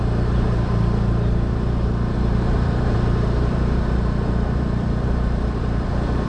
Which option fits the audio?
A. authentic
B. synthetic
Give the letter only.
B